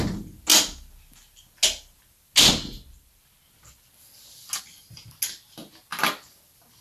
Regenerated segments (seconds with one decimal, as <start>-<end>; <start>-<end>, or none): none